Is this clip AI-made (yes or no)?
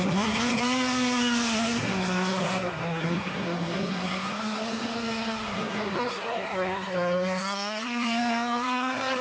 yes